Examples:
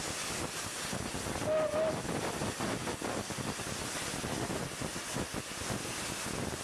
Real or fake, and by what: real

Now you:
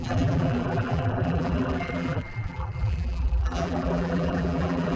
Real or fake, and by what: fake, vocoder, BigVGAN v2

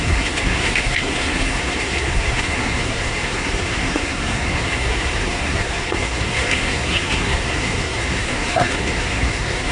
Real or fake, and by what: fake, codec, SNAC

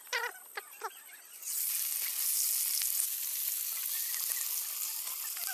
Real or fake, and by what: real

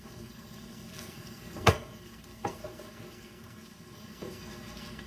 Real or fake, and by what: fake, codec, SNAC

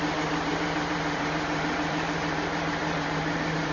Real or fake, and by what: fake, vocoder, BigVGAN v2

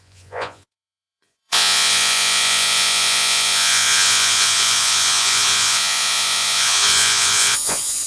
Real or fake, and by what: fake, vocoder, Vocos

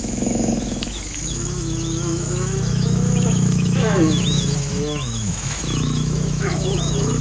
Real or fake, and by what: fake, autoencoder, DAC-VAE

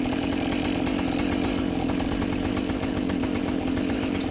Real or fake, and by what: real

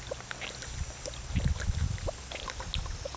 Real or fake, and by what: real